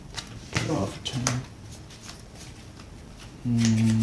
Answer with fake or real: real